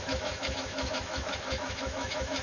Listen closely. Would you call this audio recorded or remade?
remade